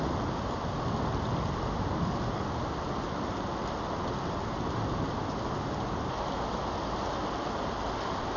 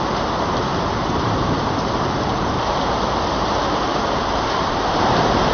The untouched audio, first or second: first